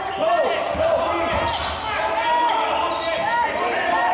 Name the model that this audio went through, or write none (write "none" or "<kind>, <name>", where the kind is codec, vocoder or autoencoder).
none